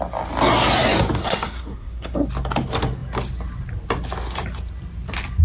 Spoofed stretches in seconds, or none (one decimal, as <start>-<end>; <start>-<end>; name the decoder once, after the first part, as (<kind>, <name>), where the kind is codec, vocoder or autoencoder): 1.2-2.3 (codec, SNAC)